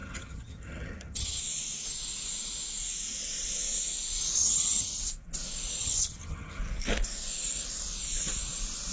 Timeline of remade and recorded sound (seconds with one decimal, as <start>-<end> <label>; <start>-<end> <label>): 0.0-1.4 remade; 1.4-4.4 recorded; 4.4-5.0 remade; 5.0-5.8 recorded; 5.8-6.6 remade; 6.6-8.9 recorded